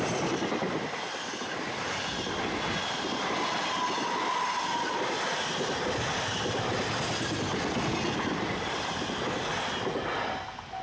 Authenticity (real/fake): real